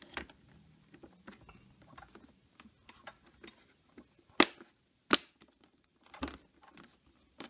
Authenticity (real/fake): real